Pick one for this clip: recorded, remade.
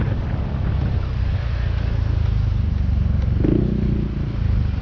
recorded